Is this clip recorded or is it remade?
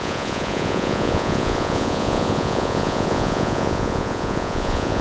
remade